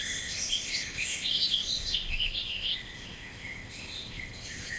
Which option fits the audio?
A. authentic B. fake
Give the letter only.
B